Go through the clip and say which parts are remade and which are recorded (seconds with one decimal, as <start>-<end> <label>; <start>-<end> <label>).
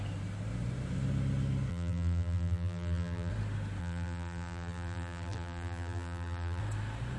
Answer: 0.0-1.7 recorded; 1.7-3.3 remade; 3.3-3.8 recorded; 3.8-6.6 remade; 6.6-7.2 recorded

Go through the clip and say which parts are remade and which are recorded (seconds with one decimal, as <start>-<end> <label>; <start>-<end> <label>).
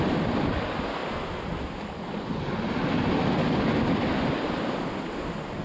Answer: 0.0-5.6 recorded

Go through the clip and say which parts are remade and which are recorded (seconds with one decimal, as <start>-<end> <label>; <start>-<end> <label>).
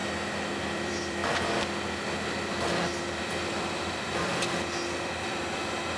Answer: 0.0-0.6 recorded; 0.6-1.2 remade; 1.2-2.9 recorded; 2.9-4.3 remade; 4.3-6.0 recorded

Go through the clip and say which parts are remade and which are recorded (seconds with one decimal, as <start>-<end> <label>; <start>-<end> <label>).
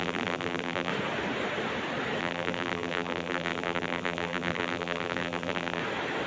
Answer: 0.0-0.9 remade; 0.9-2.2 recorded; 2.2-5.8 remade; 5.8-6.3 recorded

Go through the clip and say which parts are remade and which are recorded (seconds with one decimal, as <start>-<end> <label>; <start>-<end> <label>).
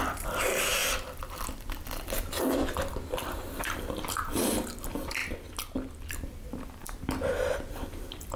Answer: 0.0-5.2 remade; 5.2-6.1 recorded; 6.1-6.8 remade; 6.8-7.7 recorded; 7.7-8.4 remade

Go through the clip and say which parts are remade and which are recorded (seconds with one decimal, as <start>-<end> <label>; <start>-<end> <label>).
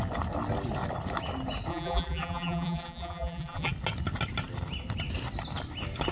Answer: 0.0-1.7 recorded; 1.7-3.7 remade; 3.7-6.1 recorded